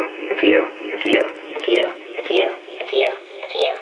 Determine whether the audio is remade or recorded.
remade